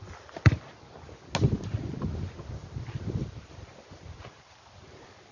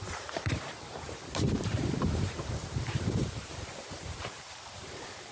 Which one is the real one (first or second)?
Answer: first